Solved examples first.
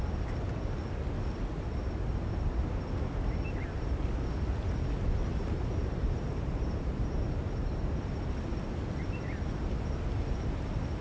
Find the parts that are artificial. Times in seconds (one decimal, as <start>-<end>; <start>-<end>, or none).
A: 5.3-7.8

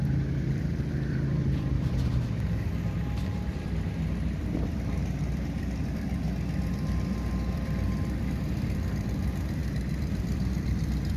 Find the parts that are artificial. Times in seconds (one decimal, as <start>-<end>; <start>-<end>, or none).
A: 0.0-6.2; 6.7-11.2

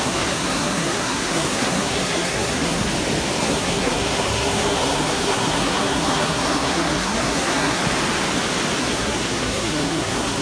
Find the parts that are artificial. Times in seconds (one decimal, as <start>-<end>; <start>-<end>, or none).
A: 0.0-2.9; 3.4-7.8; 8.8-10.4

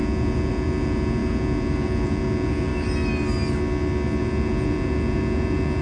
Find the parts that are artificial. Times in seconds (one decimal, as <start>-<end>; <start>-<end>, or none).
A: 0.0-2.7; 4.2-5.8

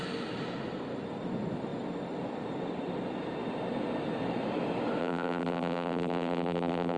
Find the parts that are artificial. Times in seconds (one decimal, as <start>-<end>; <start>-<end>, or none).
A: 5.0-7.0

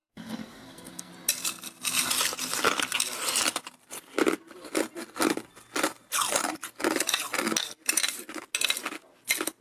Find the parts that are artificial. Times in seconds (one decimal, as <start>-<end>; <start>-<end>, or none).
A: 0.0-1.1